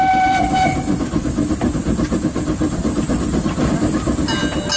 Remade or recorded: recorded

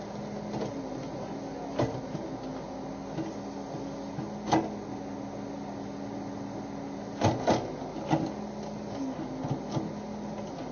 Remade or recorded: recorded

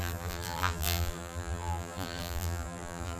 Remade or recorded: remade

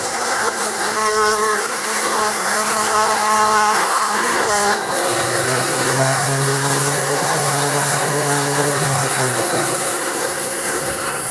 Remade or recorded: remade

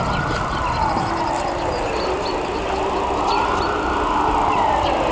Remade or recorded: recorded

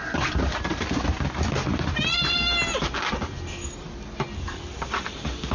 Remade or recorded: recorded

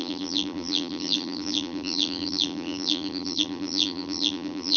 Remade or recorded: remade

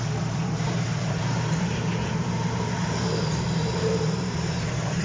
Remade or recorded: remade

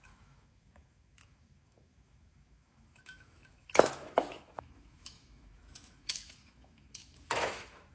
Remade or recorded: remade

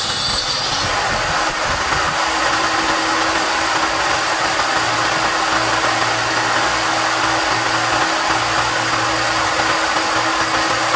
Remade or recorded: recorded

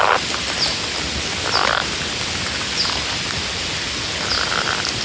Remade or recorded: recorded